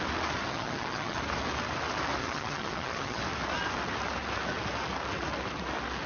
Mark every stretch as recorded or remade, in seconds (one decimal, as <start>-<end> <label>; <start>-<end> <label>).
0.0-0.5 recorded; 0.5-1.2 remade; 1.2-2.2 recorded; 2.2-3.2 remade; 3.2-6.1 recorded